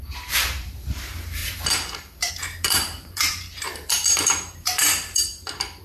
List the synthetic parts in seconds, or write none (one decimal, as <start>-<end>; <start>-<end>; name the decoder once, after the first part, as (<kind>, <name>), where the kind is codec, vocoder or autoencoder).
0.0-5.8 (vocoder, BigVGAN v2)